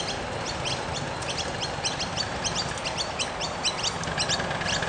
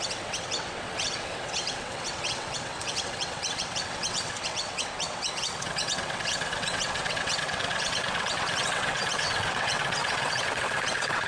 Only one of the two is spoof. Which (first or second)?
second